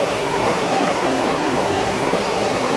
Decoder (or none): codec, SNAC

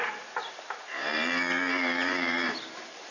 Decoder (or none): vocoder, BigVGAN v2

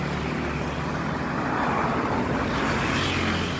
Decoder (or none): none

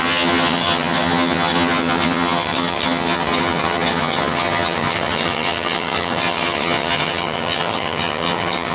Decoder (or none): vocoder, HiFi-GAN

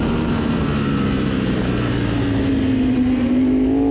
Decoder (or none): none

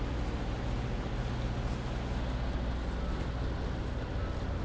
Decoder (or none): none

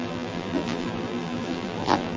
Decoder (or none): vocoder, BigVGAN v2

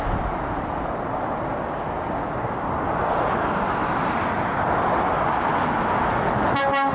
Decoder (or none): none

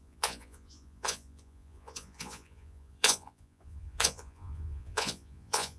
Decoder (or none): vocoder, Vocos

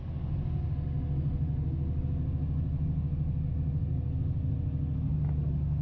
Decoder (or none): none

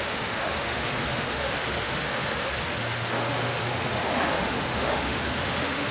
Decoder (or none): autoencoder, DAC-VAE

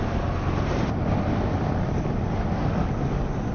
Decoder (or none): none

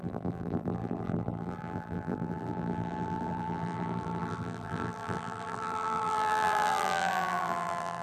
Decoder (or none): vocoder, BigVGAN v2